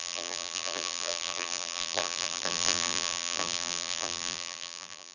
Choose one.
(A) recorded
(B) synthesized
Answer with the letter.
B